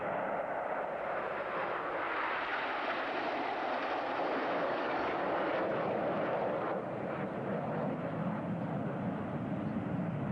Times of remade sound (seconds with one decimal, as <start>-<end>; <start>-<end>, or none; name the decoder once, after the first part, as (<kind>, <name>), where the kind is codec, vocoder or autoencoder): 4.4-5.2 (codec, DAC)